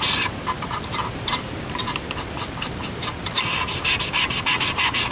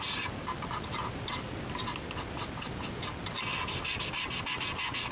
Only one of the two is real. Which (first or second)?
second